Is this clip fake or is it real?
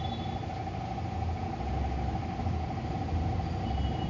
real